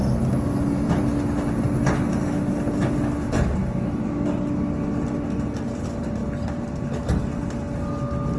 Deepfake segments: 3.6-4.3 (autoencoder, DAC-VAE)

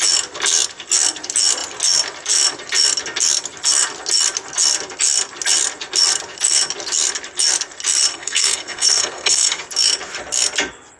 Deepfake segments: 8.1-9.6 (codec, SNAC)

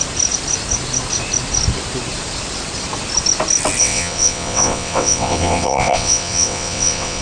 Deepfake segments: 3.8-7.2 (vocoder, WaveNeXt)

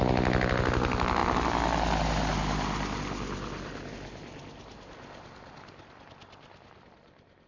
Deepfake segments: none

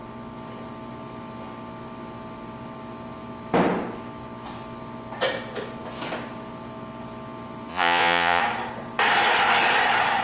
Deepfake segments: 7.7-8.4 (vocoder, Vocos)

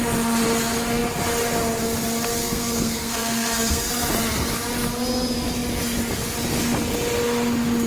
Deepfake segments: 2.4-3.9 (codec, SNAC)